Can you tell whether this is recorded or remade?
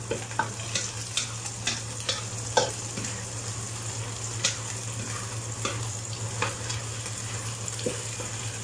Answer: recorded